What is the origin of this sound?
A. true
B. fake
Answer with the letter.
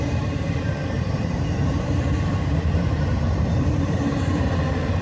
B